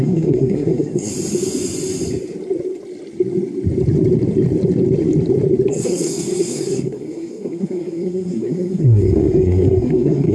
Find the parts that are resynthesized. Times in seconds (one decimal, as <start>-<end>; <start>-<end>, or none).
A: 0.0-1.1; 5.7-10.3